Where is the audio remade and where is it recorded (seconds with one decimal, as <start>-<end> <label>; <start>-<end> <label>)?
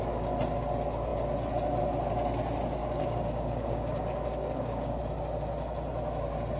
0.0-2.8 recorded; 2.8-5.0 remade; 5.0-6.6 recorded